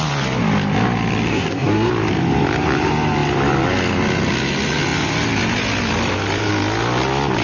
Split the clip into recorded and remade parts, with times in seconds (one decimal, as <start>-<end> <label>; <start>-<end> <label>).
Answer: 0.0-1.3 recorded; 1.3-1.9 remade; 1.9-7.4 recorded